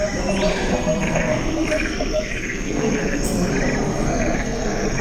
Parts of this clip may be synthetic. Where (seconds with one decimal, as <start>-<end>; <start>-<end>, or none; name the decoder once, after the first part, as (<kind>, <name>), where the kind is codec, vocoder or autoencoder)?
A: 0.5-3.5 (codec, SNAC); 3.9-5.0